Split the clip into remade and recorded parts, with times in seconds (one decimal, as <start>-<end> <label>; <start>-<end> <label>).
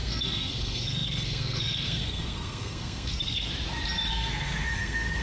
0.0-3.5 remade; 3.5-4.1 recorded; 4.1-5.2 remade